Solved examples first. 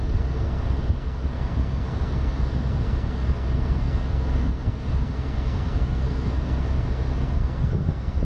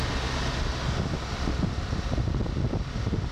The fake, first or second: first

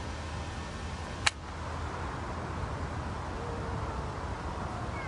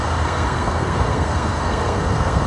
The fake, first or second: second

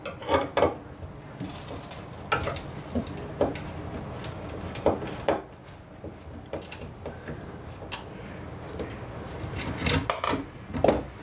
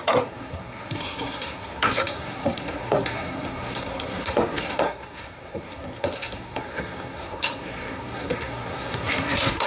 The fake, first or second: second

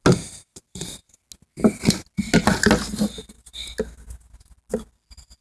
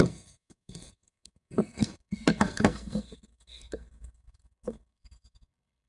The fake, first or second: second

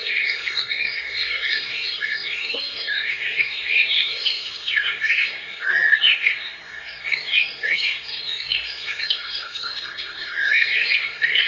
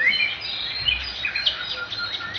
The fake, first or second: first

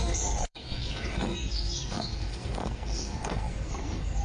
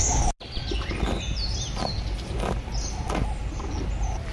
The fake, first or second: first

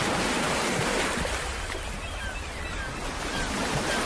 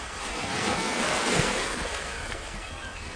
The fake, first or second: second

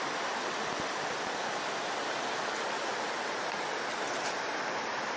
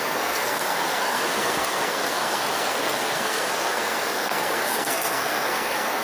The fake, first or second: second